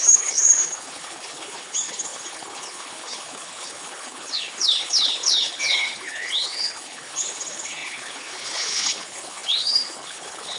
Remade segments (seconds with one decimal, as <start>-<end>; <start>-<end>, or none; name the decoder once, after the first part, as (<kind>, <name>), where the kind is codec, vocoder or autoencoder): 0.0-10.6 (codec, HILCodec)